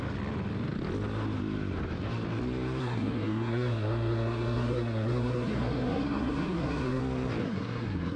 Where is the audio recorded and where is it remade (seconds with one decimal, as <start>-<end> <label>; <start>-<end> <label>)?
0.0-2.8 recorded; 2.8-7.0 remade; 7.0-7.4 recorded; 7.4-8.2 remade